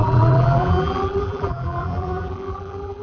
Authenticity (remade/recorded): remade